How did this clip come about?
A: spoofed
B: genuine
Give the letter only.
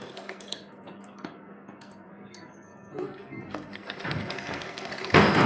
A